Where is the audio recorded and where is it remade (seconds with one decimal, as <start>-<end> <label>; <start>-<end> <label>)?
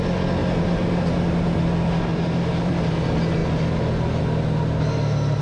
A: 0.0-0.4 recorded; 0.4-1.6 remade; 1.6-2.1 recorded; 2.1-2.9 remade; 2.9-5.4 recorded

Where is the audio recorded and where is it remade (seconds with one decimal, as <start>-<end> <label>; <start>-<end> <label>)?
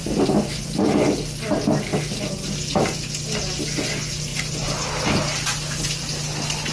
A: 0.0-1.1 remade; 1.1-4.3 recorded; 4.3-4.8 remade; 4.8-6.7 recorded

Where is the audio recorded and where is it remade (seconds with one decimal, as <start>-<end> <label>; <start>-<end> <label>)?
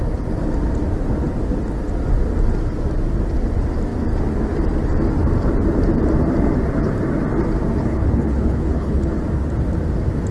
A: 0.0-7.8 recorded; 7.8-9.2 remade; 9.2-10.3 recorded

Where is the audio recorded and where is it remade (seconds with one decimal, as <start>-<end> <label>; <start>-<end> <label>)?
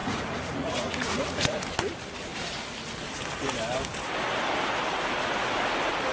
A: 0.0-1.6 remade; 1.6-6.1 recorded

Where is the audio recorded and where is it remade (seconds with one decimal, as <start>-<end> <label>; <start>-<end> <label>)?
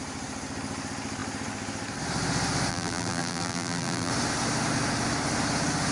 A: 0.0-2.7 recorded; 2.7-4.1 remade; 4.1-5.9 recorded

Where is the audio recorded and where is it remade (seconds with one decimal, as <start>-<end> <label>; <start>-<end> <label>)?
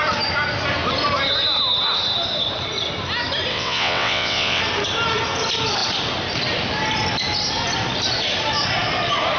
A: 0.0-3.5 recorded; 3.5-4.6 remade; 4.6-9.4 recorded